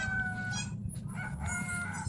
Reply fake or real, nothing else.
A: fake